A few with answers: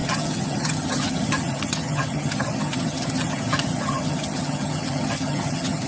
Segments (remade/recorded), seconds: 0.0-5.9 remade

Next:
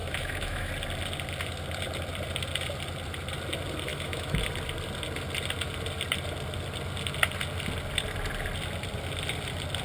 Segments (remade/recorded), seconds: 0.0-0.7 remade; 0.7-3.9 recorded; 3.9-4.4 remade; 4.4-9.8 recorded

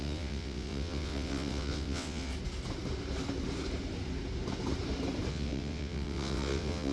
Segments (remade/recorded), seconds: 0.0-2.3 remade; 2.3-5.3 recorded; 5.3-6.9 remade

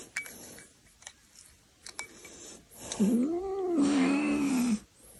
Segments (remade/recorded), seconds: 0.0-3.8 recorded; 3.8-4.5 remade; 4.5-5.2 recorded

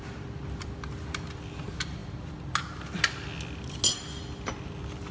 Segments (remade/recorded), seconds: 0.0-5.1 recorded

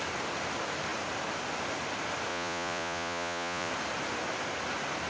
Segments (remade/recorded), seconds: 0.0-2.3 recorded; 2.3-3.7 remade; 3.7-5.1 recorded

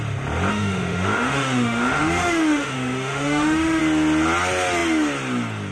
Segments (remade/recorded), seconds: 0.0-0.5 recorded; 0.5-3.8 remade; 3.8-5.7 recorded